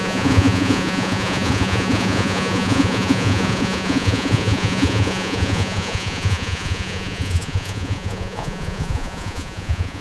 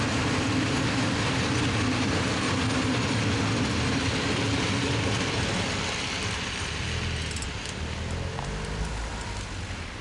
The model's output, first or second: first